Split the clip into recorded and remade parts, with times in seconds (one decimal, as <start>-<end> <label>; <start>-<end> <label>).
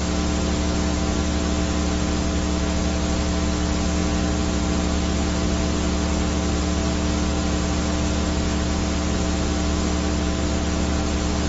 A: 0.0-11.5 recorded